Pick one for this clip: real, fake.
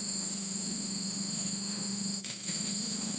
fake